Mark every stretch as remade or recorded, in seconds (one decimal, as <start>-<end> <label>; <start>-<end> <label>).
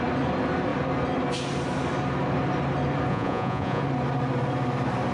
0.0-3.1 recorded; 3.1-3.8 remade; 3.8-5.1 recorded